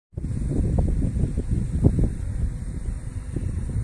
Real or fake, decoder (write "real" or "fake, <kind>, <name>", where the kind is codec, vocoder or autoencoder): real